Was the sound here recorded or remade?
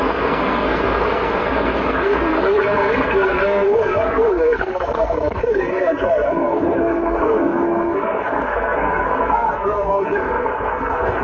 remade